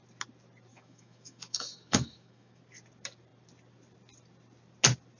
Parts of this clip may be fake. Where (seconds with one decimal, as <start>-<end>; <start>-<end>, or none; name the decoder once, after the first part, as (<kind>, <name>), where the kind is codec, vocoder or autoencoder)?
0.7-2.6 (autoencoder, DAC-VAE)